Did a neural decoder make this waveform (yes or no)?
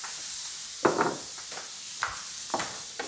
no